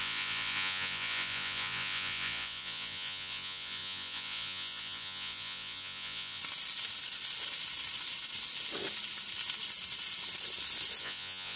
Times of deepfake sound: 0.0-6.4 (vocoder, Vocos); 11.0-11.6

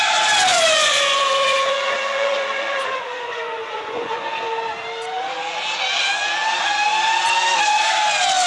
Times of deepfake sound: 0.5-4.3 (vocoder, Vocos)

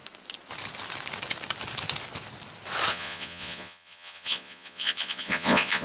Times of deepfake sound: 2.9-5.8 (vocoder, Vocos)